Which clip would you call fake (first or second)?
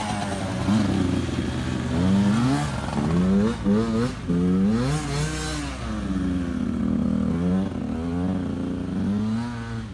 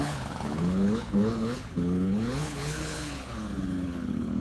second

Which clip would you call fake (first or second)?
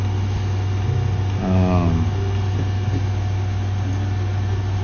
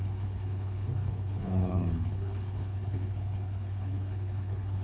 second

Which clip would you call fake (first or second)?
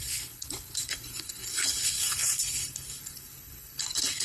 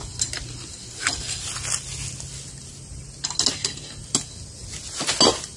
first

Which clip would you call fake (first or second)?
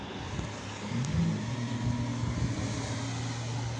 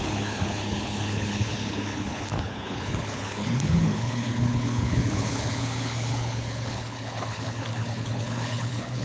second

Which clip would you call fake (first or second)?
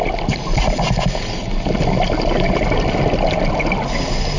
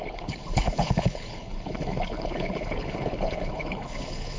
second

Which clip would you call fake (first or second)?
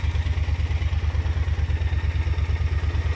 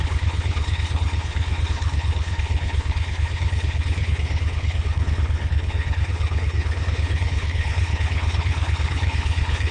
second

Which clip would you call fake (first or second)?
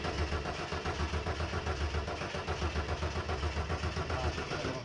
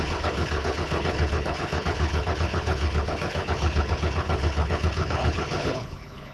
second